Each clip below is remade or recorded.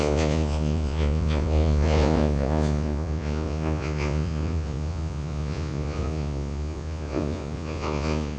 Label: remade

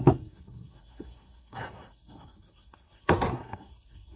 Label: remade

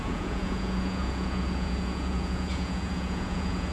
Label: remade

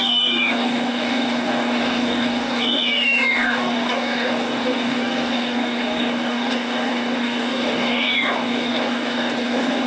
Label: remade